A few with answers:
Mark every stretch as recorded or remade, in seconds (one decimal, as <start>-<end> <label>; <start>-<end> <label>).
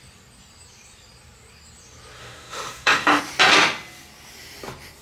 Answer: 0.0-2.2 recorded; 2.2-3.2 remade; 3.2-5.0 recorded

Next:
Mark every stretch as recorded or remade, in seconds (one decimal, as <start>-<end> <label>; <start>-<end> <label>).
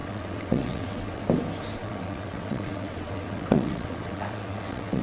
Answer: 0.0-1.2 remade; 1.2-1.8 recorded; 1.8-5.0 remade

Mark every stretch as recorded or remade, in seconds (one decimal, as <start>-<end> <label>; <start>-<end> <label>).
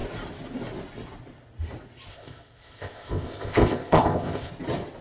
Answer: 0.0-2.1 recorded; 2.1-4.5 remade; 4.5-5.0 recorded